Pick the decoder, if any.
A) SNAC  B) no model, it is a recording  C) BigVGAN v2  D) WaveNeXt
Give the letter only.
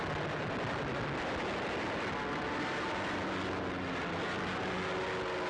B